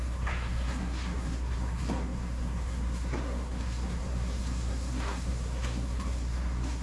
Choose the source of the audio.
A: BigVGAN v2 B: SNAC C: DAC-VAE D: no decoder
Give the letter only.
B